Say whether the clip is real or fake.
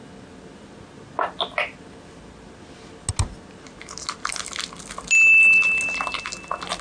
real